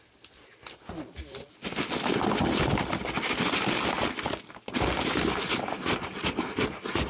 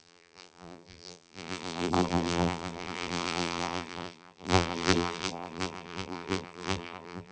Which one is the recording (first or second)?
first